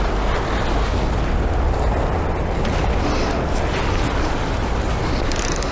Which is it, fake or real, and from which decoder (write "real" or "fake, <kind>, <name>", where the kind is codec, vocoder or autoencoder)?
real